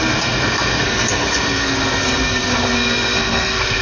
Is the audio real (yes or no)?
no